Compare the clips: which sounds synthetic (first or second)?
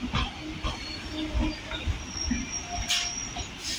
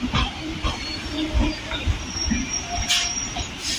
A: second